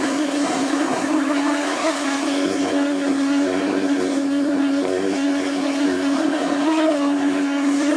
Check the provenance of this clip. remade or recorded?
remade